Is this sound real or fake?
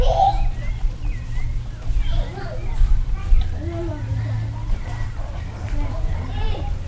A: real